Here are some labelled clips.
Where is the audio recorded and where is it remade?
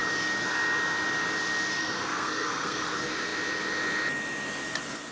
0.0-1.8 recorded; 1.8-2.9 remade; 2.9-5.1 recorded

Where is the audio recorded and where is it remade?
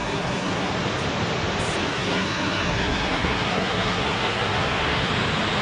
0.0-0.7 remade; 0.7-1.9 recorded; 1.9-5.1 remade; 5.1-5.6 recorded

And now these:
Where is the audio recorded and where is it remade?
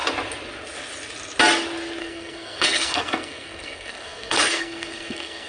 0.0-2.0 recorded; 2.0-5.5 remade